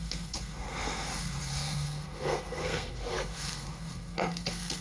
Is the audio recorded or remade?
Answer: remade